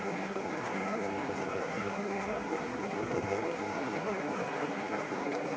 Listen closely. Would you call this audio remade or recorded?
remade